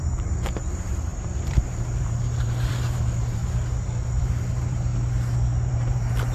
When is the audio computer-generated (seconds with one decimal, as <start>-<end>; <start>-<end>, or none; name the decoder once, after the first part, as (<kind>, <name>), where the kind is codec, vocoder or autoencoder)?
0.0-3.4 (vocoder, BigVGAN v2); 4.2-4.9; 5.7-6.3